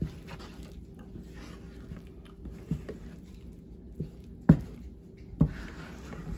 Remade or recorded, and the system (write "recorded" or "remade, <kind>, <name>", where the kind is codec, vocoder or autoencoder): recorded